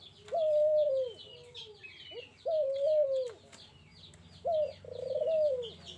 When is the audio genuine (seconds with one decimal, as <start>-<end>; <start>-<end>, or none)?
0.0-6.0